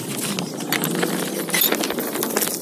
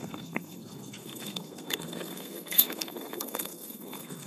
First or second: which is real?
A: first